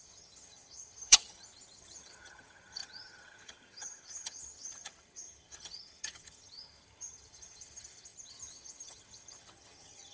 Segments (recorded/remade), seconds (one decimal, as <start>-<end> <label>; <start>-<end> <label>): 0.0-10.1 remade